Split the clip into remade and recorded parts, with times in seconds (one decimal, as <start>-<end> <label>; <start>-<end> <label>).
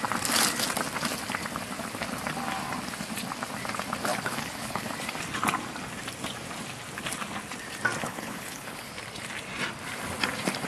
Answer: 0.0-4.1 recorded; 4.1-4.9 remade; 4.9-8.0 recorded; 8.0-8.9 remade; 8.9-10.7 recorded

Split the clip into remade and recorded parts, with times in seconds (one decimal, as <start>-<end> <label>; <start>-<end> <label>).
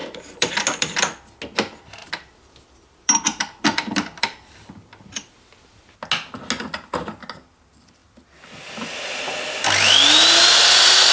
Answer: 0.0-1.3 remade; 1.3-2.0 recorded; 2.0-5.8 remade; 5.8-8.0 recorded; 8.0-9.2 remade; 9.2-11.1 recorded